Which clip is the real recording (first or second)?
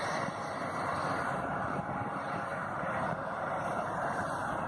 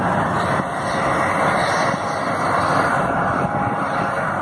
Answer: second